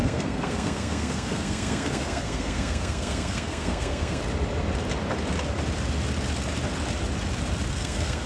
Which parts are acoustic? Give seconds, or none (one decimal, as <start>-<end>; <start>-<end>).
4.2-7.7